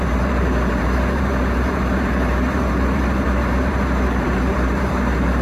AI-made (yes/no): yes